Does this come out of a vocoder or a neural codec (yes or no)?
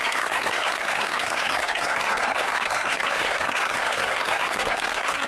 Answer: yes